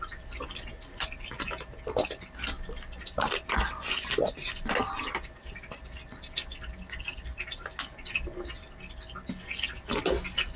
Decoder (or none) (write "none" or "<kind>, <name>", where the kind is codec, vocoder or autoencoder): none